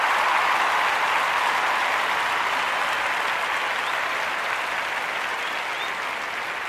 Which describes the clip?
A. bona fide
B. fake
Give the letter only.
A